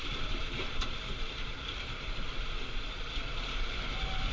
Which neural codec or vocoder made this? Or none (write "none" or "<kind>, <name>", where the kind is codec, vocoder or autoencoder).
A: vocoder, BigVGAN v2